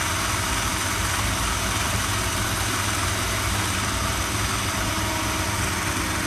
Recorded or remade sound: recorded